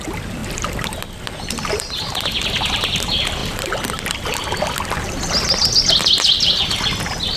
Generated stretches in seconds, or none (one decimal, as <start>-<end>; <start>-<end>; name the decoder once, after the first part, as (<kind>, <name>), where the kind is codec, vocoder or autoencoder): none